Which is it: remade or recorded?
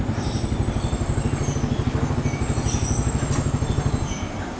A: recorded